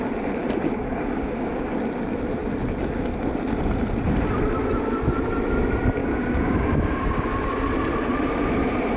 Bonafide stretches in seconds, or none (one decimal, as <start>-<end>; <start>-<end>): 0.0-0.4; 1.8-6.0; 7.6-9.0